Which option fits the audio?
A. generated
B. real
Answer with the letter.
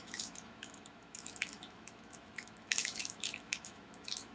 A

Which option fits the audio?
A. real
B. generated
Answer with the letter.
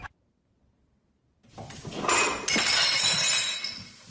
A